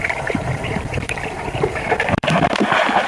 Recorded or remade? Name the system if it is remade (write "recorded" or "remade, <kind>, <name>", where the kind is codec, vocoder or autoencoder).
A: remade, vocoder, BigVGAN v2